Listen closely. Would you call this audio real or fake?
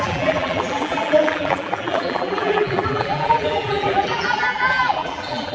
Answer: fake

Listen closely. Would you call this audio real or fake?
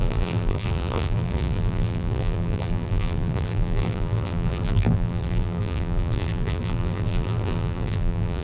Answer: fake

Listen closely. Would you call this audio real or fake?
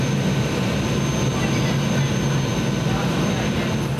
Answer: real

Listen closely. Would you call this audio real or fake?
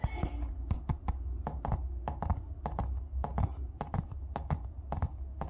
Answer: real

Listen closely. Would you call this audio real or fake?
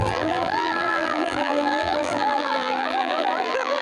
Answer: fake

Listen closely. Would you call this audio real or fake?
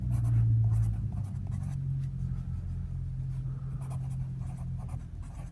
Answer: real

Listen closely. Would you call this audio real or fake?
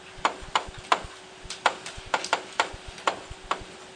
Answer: fake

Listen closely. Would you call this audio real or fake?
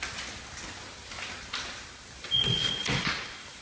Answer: real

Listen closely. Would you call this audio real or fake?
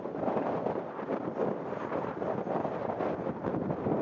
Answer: fake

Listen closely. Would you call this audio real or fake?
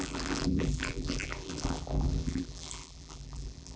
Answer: fake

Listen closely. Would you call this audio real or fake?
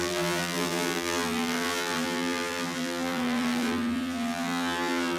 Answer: fake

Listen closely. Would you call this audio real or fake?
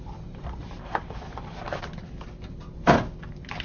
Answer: fake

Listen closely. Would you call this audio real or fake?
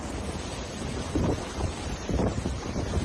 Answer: fake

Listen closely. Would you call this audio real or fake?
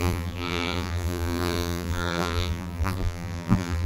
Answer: fake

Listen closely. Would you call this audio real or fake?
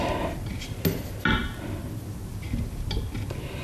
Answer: real